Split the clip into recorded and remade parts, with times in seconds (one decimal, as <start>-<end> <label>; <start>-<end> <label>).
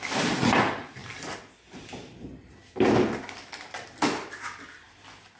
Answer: 0.0-5.4 recorded